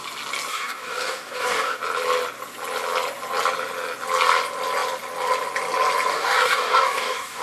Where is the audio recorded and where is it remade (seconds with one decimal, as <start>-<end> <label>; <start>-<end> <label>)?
0.0-0.5 recorded; 0.5-1.8 remade; 1.8-6.1 recorded; 6.1-7.4 remade